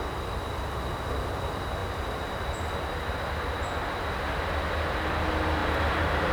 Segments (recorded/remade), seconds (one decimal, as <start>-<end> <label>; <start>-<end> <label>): 0.0-5.6 recorded; 5.6-6.3 remade